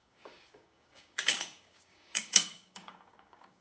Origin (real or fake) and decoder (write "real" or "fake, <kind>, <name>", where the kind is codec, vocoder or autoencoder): fake, codec, DAC